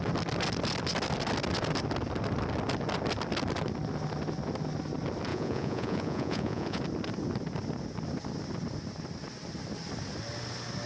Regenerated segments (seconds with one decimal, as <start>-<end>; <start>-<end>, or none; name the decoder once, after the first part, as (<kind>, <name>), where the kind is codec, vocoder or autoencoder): 5.3-6.8 (vocoder, Vocos)